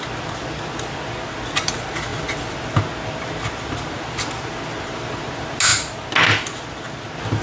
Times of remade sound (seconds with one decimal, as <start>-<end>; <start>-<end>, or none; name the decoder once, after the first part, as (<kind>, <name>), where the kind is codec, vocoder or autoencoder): none